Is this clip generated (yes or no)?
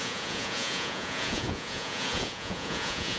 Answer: yes